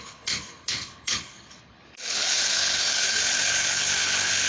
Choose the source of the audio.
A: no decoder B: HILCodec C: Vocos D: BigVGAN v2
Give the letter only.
B